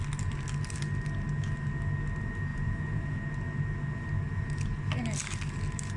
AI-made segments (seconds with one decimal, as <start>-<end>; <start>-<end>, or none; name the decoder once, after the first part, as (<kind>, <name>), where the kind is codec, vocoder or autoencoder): 2.5-3.2 (vocoder, Vocos)